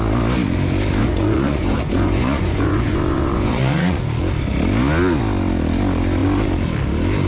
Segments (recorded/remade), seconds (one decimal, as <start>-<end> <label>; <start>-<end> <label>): 0.0-1.0 recorded; 1.0-4.0 remade; 4.0-7.3 recorded